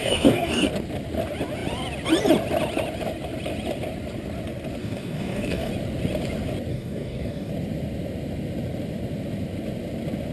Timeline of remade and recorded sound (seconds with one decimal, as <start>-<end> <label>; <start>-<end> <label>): 0.0-0.7 remade; 0.7-4.8 recorded; 4.8-5.7 remade; 5.7-6.7 recorded; 6.7-7.5 remade; 7.5-10.3 recorded